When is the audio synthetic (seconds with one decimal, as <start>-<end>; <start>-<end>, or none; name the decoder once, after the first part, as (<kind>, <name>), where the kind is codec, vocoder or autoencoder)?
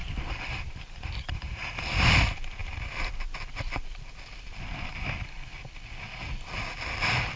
0.0-1.6 (vocoder, BigVGAN v2)